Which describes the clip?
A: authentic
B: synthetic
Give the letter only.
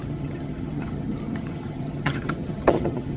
B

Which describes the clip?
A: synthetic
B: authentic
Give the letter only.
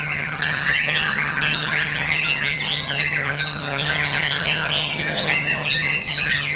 A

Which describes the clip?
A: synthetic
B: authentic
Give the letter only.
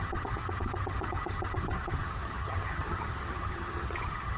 A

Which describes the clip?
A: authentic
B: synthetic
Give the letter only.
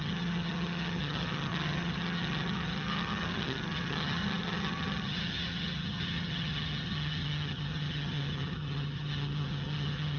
B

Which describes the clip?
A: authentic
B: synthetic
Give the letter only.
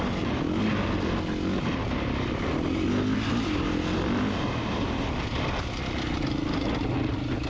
A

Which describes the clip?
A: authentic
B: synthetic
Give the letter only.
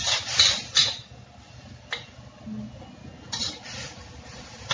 A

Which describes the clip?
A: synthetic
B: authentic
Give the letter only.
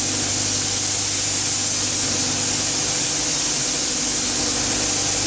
B